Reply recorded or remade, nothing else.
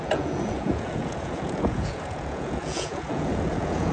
remade